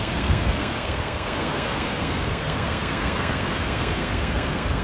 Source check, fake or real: fake